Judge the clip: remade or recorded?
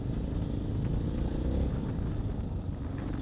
recorded